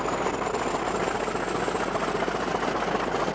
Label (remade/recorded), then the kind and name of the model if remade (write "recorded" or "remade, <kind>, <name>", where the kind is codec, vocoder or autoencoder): recorded